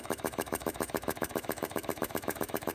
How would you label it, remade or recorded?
remade